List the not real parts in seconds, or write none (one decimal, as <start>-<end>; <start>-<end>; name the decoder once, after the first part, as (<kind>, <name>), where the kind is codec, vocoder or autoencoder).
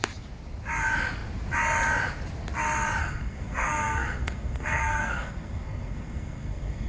3.0-6.9 (codec, SNAC)